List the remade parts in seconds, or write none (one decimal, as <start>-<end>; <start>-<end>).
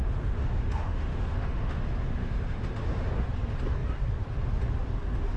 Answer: 0.0-1.8; 2.2-3.1